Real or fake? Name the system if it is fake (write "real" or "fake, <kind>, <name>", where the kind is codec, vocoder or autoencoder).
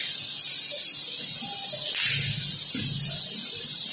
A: real